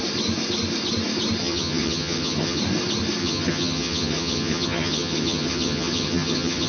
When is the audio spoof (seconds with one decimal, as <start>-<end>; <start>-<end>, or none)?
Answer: 1.4-2.6; 3.2-6.7